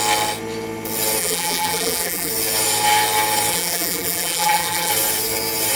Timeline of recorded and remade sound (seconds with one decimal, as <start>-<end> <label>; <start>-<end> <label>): 0.0-1.2 recorded; 1.2-2.3 remade; 2.3-3.5 recorded; 3.5-4.9 remade; 4.9-5.8 recorded